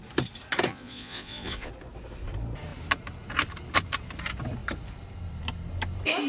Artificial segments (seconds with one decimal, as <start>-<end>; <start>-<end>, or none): 0.7-1.7